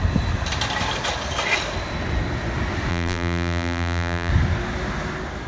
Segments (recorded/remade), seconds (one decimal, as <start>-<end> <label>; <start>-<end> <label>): 0.0-2.9 recorded; 2.9-4.3 remade; 4.3-5.5 recorded